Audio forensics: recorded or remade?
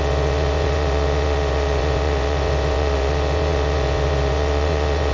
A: remade